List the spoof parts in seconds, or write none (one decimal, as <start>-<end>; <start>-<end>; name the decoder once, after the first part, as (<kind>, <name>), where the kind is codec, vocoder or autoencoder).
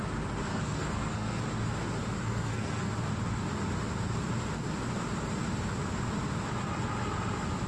0.5-1.4 (codec, SNAC); 2.2-2.9